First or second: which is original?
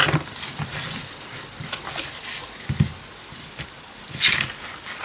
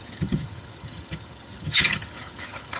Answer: first